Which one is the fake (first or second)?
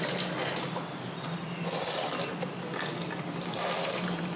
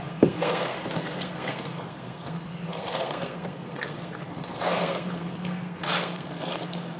second